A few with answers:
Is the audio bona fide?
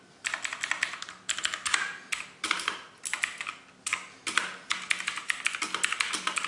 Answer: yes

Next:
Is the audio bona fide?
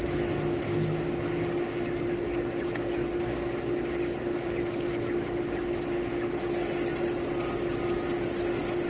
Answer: yes